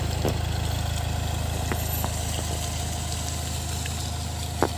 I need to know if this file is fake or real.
real